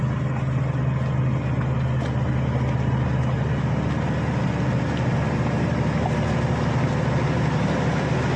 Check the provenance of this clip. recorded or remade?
recorded